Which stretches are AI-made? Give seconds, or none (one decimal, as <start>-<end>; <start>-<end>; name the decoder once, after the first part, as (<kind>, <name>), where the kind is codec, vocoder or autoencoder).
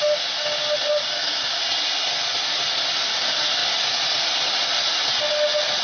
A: none